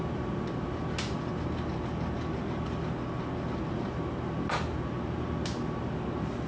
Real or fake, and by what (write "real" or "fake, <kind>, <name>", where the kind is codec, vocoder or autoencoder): real